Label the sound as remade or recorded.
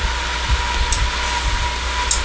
recorded